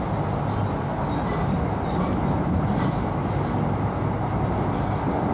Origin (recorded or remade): recorded